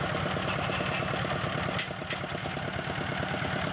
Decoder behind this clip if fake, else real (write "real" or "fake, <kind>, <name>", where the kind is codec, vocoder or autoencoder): real